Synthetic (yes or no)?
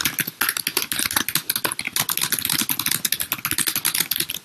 no